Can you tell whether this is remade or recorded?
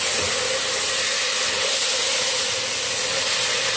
recorded